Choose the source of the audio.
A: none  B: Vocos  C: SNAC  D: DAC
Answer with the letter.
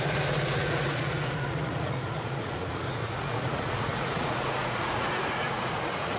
B